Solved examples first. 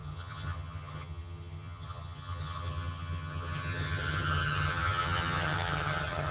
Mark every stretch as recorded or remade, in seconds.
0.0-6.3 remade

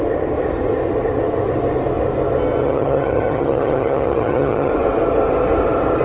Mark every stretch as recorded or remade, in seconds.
0.0-2.6 recorded; 2.6-4.7 remade; 4.7-6.0 recorded